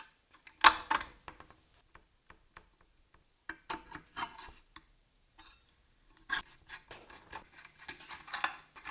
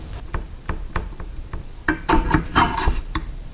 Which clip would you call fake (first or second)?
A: second